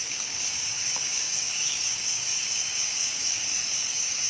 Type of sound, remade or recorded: remade